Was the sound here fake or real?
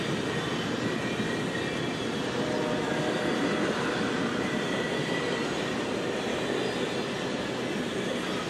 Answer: real